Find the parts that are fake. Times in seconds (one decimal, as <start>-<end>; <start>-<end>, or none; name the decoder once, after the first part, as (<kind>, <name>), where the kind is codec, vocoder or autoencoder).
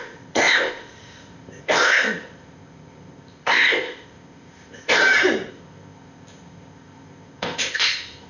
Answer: 0.0-5.0 (codec, ZipCodec); 5.5-8.3